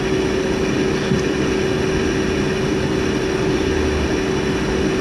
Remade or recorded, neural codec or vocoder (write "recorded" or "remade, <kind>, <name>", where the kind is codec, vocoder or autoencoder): recorded